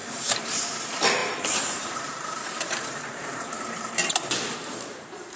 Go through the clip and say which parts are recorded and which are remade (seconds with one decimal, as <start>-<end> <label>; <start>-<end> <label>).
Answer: 0.0-0.6 remade; 0.6-1.2 recorded; 1.2-4.3 remade; 4.3-5.4 recorded